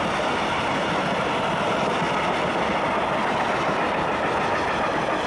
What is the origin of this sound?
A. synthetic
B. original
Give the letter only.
B